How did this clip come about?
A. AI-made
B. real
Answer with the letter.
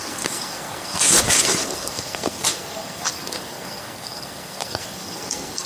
A